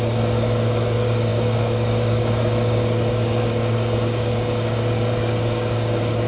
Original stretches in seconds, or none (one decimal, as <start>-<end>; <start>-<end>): none